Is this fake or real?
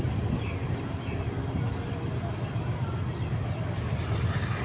real